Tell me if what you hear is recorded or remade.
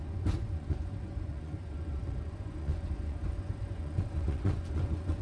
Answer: remade